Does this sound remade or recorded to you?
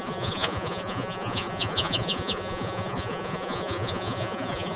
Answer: remade